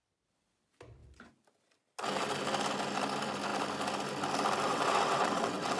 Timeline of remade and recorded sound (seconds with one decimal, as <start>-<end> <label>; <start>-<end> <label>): 0.0-4.7 recorded; 4.7-5.8 remade